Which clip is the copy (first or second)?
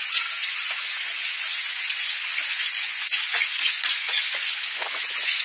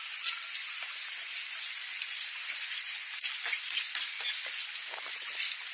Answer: first